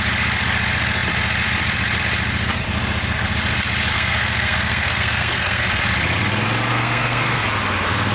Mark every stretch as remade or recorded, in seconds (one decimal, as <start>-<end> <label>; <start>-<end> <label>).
0.0-3.9 recorded; 3.9-5.8 remade; 5.8-6.7 recorded; 6.7-7.4 remade; 7.4-8.1 recorded